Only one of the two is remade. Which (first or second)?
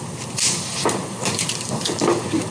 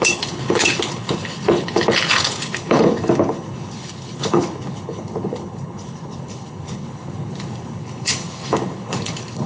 second